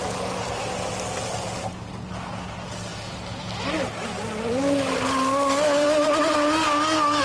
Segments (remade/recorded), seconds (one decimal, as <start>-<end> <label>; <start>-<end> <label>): 0.0-7.2 recorded